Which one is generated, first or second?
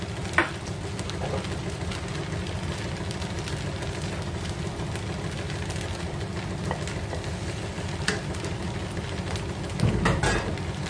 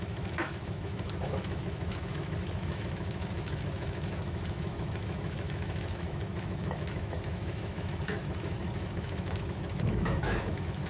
second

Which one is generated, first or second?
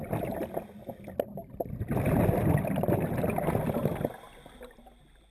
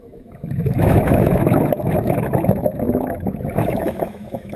second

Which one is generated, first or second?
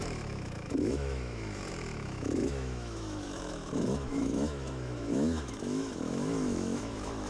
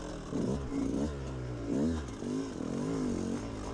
first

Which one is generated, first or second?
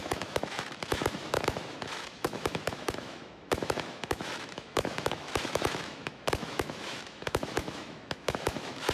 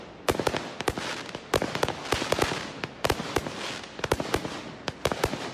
first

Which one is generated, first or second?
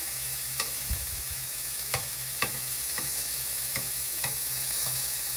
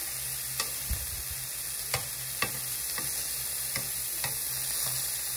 first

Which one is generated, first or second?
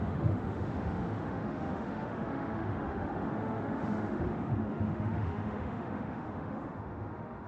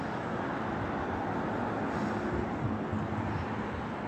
first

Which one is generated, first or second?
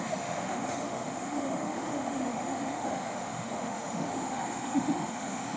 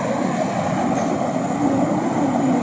first